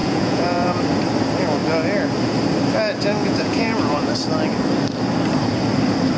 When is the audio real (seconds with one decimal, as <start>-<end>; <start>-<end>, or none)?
0.8-3.2; 4.1-6.2